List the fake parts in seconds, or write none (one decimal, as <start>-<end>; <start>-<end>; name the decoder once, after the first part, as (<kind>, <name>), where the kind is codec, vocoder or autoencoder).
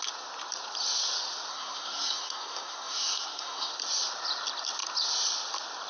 1.5-3.7 (codec, SNAC)